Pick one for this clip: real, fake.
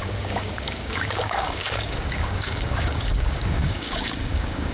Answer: fake